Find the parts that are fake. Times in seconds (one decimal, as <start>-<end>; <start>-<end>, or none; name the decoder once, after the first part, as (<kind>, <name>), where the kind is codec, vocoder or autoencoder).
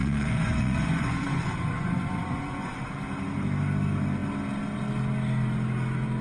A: 0.0-2.7 (vocoder, Vocos)